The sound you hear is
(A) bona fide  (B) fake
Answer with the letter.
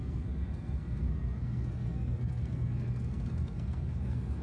B